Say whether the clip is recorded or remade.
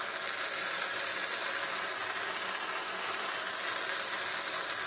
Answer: recorded